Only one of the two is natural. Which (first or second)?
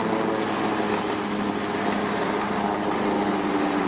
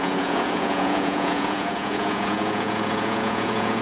first